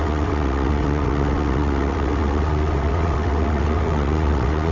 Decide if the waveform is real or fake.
fake